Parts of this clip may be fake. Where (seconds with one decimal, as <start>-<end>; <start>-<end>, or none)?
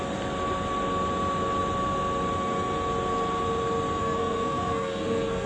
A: 4.0-5.5